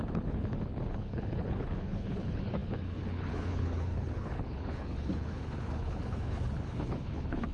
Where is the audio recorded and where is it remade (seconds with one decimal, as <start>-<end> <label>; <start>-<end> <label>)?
0.0-7.5 remade